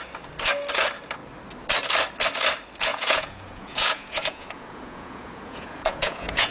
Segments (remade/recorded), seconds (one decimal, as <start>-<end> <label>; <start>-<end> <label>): 0.0-2.9 recorded; 2.9-6.5 remade